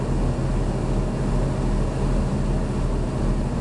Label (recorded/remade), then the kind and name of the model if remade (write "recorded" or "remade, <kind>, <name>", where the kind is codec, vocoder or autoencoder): recorded